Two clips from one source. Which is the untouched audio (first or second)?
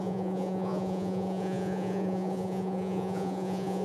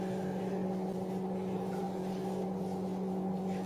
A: second